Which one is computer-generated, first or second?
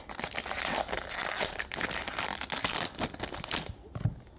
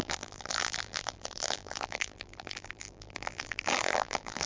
second